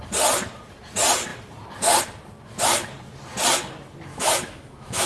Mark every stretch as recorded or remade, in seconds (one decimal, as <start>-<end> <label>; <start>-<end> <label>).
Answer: 0.0-4.1 recorded; 4.1-5.1 remade